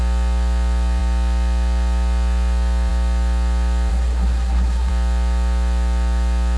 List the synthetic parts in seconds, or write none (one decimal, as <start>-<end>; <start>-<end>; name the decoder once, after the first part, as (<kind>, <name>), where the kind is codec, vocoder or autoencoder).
3.9-4.9 (codec, SNAC)